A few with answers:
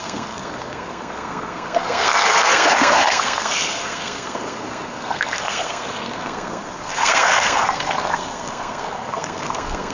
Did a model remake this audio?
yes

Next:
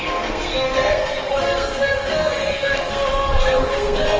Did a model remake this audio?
yes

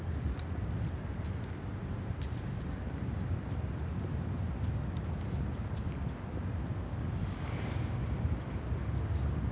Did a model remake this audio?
no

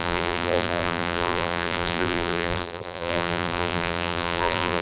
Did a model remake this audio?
yes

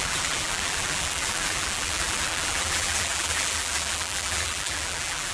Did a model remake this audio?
yes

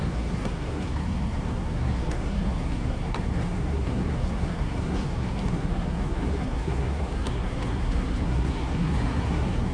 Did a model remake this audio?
yes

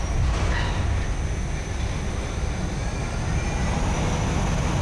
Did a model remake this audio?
no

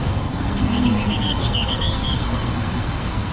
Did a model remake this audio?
yes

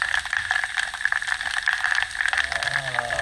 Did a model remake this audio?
no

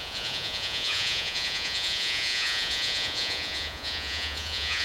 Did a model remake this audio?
yes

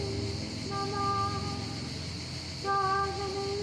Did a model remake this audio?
no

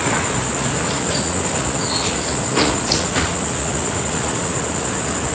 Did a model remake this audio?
yes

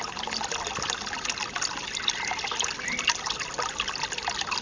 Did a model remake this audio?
no